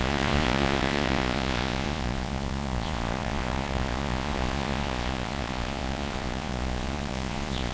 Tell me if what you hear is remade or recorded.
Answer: remade